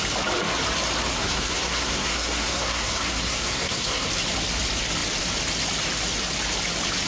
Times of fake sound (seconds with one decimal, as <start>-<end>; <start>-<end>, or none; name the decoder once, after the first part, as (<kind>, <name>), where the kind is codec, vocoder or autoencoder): 1.1-4.1 (codec, SNAC)